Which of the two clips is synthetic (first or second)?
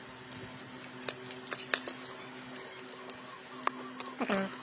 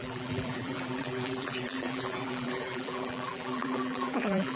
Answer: second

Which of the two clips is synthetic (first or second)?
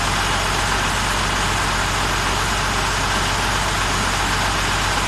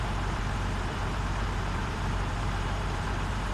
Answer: second